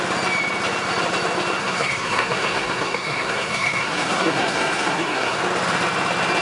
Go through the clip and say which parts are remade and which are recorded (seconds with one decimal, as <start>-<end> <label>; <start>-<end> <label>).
0.0-1.6 recorded; 1.6-5.4 remade; 5.4-6.4 recorded